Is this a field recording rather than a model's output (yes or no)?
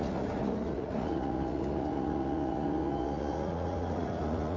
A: no